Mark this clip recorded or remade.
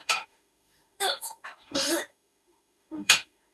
remade